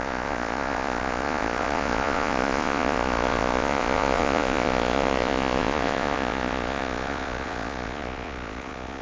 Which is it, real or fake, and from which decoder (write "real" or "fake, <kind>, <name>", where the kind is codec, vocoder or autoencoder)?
fake, vocoder, Vocos